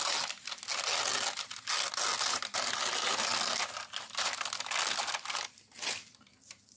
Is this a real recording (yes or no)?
yes